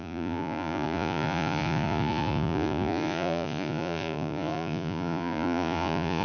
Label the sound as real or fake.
fake